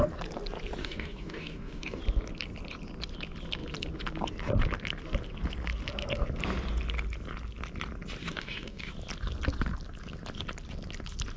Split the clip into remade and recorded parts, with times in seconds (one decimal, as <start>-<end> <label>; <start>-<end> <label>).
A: 0.0-0.8 recorded; 0.8-2.0 remade; 2.0-8.2 recorded; 8.2-8.9 remade; 8.9-11.4 recorded